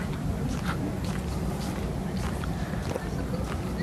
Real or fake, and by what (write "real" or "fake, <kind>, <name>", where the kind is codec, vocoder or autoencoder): real